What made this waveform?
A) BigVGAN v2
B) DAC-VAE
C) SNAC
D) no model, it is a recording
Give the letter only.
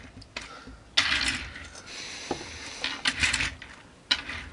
D